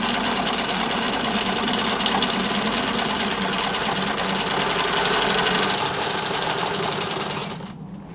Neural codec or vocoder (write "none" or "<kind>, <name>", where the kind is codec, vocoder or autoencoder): none